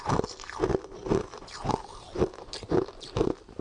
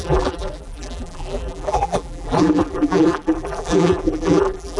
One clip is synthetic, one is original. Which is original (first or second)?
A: first